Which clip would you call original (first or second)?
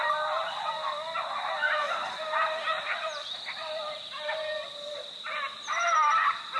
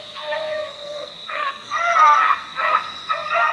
first